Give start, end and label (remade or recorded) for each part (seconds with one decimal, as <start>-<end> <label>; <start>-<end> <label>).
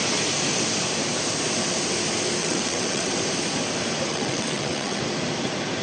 0.0-2.4 recorded; 2.4-3.1 remade; 3.1-4.1 recorded; 4.1-5.0 remade; 5.0-5.8 recorded